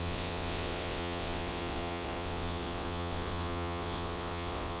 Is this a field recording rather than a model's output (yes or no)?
no